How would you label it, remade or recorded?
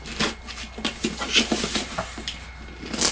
recorded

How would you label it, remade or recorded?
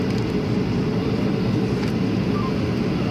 recorded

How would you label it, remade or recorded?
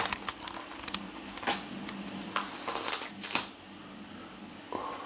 recorded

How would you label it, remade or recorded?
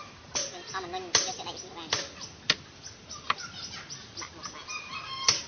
recorded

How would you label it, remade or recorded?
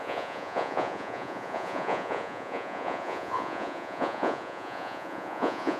remade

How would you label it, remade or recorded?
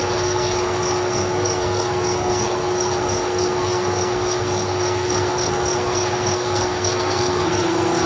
remade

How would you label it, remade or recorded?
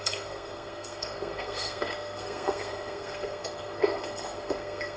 remade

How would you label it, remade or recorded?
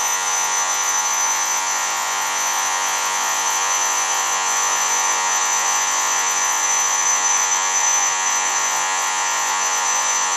remade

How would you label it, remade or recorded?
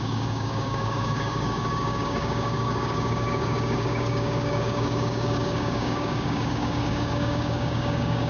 remade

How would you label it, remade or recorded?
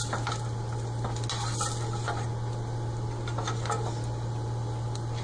recorded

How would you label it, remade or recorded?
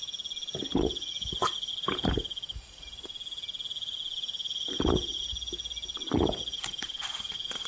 recorded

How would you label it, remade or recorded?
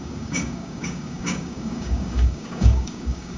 remade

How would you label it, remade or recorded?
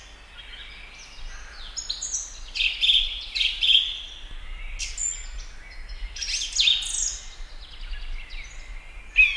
recorded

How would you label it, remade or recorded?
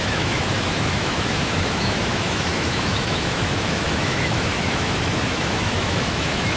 remade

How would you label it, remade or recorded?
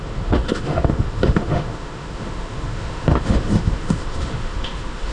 remade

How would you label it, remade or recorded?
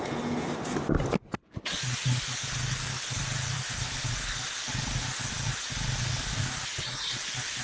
recorded